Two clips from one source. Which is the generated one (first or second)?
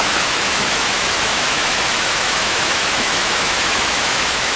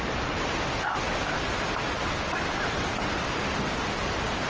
first